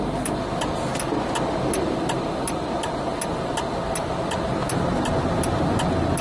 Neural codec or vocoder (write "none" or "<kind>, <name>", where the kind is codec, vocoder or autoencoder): none